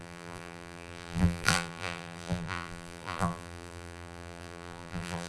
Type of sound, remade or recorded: remade